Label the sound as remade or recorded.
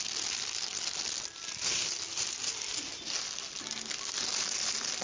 recorded